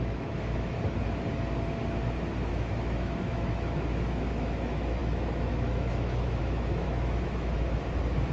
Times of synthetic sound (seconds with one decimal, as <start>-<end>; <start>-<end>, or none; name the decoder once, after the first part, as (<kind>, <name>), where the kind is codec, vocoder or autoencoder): 0.0-0.8 (autoencoder, DAC-VAE); 2.5-8.3